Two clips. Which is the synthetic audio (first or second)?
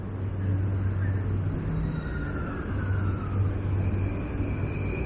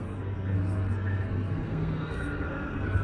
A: second